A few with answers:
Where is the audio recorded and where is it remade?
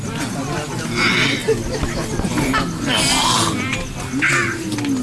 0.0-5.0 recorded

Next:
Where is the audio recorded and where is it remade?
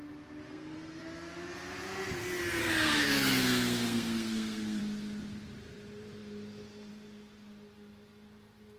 0.0-0.5 recorded; 0.5-1.0 remade; 1.0-2.6 recorded; 2.6-4.8 remade; 4.8-8.8 recorded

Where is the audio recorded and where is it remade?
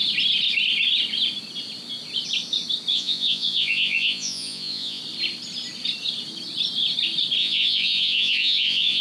0.0-2.9 recorded; 2.9-5.0 remade; 5.0-7.4 recorded; 7.4-9.0 remade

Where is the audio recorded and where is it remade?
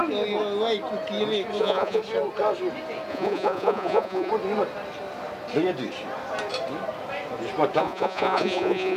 0.0-1.6 recorded; 1.6-2.0 remade; 2.0-3.1 recorded; 3.1-4.3 remade; 4.3-7.8 recorded; 7.8-9.0 remade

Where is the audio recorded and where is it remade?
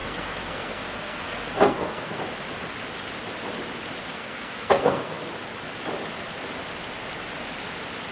0.0-2.2 remade; 2.2-4.0 recorded; 4.0-5.2 remade; 5.2-8.1 recorded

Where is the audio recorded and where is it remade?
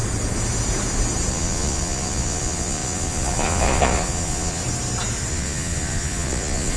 0.0-1.3 recorded; 1.3-4.6 remade; 4.6-5.3 recorded; 5.3-6.8 remade